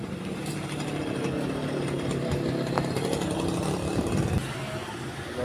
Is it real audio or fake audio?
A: real